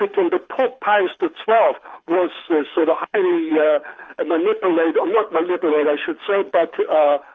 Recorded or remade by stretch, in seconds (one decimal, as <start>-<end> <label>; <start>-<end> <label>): 0.0-7.3 remade